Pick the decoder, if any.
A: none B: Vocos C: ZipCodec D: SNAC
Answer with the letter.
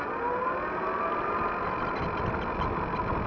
A